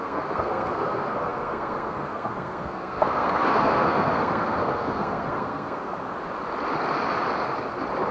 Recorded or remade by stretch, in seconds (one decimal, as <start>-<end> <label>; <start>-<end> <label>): 0.0-5.9 remade; 5.9-8.1 recorded